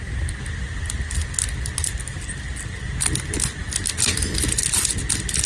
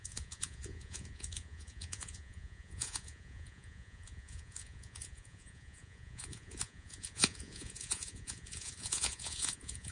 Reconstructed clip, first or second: second